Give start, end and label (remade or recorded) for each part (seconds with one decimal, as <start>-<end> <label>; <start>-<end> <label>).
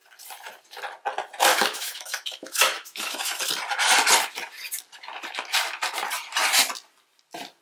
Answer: 0.0-1.5 recorded; 1.5-3.4 remade; 3.4-7.6 recorded